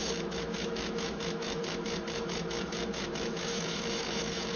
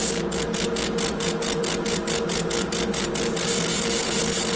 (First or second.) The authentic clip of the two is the second